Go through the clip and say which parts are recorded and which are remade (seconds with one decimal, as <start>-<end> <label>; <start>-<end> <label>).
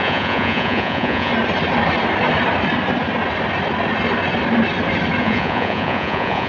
0.0-1.3 remade; 1.3-5.2 recorded; 5.2-6.5 remade